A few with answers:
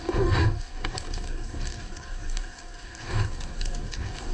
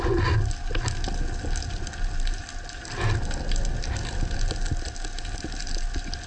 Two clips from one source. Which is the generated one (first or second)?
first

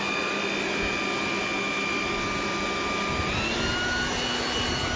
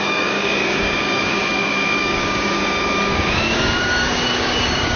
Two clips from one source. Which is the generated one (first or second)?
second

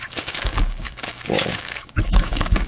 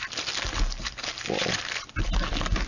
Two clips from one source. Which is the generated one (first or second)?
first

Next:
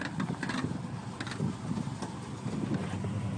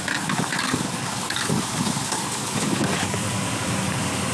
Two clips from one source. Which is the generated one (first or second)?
second